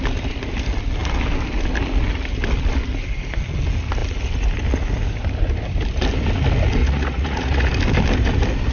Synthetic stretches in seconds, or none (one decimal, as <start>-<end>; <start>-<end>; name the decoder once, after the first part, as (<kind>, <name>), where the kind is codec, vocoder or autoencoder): 6.8-7.7 (vocoder, Vocos)